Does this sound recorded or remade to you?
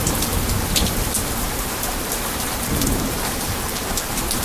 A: remade